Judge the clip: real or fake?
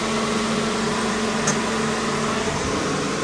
real